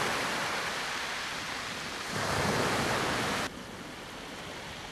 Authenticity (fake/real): real